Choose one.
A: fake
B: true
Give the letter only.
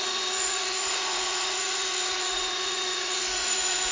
A